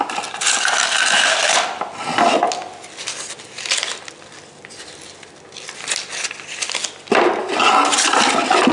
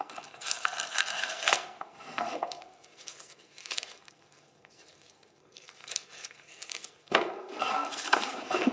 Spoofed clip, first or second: second